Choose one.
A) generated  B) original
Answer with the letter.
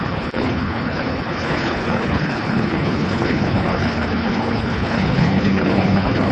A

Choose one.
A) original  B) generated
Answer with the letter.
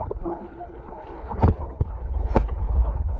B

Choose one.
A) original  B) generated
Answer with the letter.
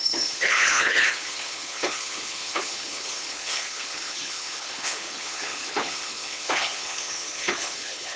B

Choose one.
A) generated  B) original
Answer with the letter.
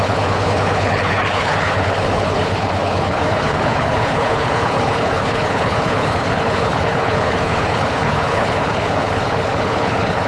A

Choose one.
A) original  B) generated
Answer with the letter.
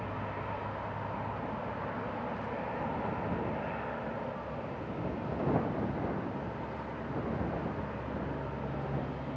A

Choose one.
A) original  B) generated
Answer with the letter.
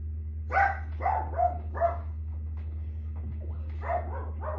A